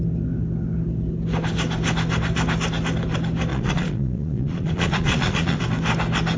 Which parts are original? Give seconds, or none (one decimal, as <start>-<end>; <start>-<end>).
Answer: 0.0-3.5; 5.6-6.4